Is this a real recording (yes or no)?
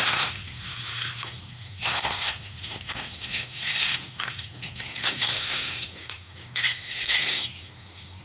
no